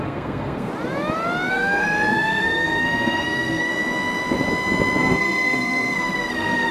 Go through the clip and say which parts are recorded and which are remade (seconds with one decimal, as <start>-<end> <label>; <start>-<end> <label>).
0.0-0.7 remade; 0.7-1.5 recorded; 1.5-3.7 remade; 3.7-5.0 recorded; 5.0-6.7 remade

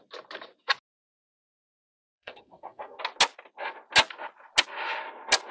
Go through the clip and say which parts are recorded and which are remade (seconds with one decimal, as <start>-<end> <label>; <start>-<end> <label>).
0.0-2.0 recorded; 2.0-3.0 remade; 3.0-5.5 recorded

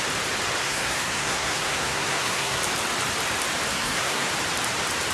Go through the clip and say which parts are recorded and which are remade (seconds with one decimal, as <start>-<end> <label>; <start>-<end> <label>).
0.0-0.6 recorded; 0.6-2.6 remade; 2.6-3.7 recorded; 3.7-4.3 remade; 4.3-5.1 recorded

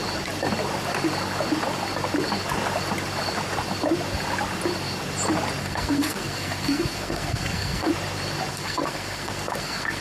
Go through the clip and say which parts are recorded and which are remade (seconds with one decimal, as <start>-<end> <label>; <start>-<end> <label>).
0.0-5.6 recorded; 5.6-7.9 remade; 7.9-8.5 recorded; 8.5-10.0 remade

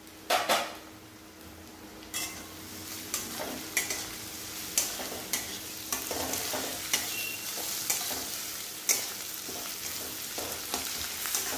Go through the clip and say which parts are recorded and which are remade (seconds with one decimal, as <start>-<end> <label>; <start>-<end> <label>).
0.0-11.6 recorded

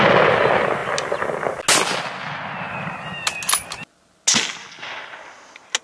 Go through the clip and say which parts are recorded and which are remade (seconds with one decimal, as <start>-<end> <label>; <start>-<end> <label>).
0.0-5.8 recorded

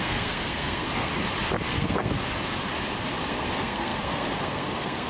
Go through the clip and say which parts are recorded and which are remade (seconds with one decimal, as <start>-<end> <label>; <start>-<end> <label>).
0.0-1.1 remade; 1.1-1.7 recorded; 1.7-2.1 remade; 2.1-3.2 recorded; 3.2-5.1 remade